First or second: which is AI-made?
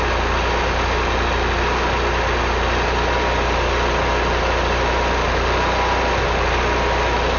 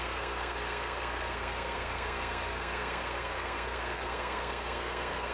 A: second